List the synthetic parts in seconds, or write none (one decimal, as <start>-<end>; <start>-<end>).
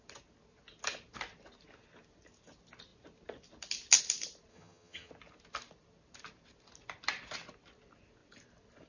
4.5-5.1